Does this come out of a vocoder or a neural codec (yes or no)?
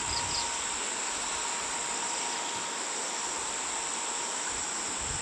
no